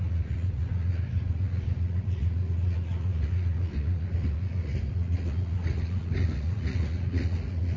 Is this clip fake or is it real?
fake